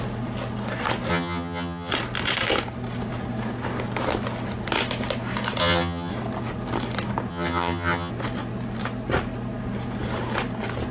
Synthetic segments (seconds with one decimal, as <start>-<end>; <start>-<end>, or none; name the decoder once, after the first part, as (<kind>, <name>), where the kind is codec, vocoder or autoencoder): 1.1-1.9 (vocoder, HiFi-GAN); 5.6-6.1; 7.3-8.1